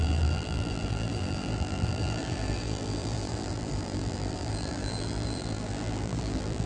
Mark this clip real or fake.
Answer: fake